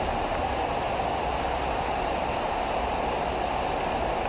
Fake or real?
real